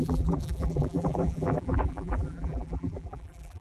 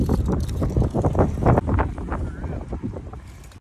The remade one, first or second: first